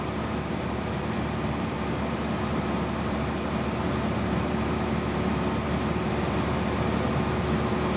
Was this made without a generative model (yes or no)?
yes